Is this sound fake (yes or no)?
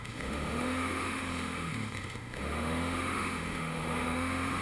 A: yes